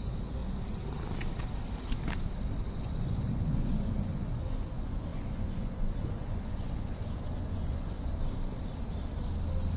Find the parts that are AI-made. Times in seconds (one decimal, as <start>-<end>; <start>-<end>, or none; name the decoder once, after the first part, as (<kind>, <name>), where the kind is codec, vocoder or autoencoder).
0.0-0.4 (vocoder, Vocos); 2.7-8.1